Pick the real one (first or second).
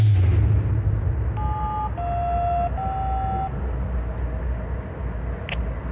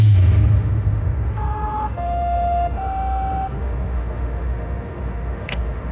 first